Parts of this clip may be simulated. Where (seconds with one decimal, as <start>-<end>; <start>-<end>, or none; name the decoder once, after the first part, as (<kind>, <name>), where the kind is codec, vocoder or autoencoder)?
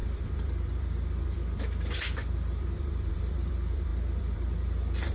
0.0-5.1 (vocoder, BigVGAN v2)